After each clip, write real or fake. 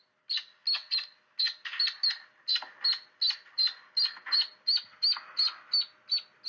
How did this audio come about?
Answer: real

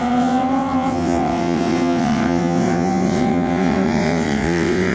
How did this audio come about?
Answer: fake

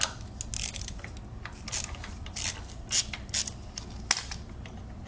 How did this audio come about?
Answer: real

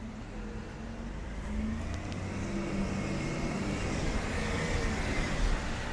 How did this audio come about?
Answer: real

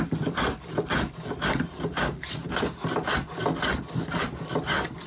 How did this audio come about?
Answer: real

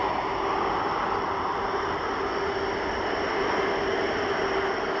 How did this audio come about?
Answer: real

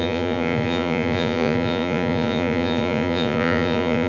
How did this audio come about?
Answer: fake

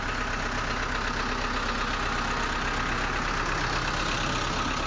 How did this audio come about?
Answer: real